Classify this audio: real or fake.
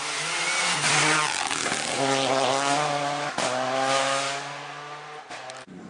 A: real